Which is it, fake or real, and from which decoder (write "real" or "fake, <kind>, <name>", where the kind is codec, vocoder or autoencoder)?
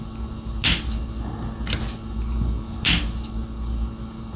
real